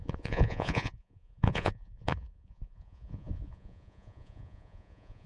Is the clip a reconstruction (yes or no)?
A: yes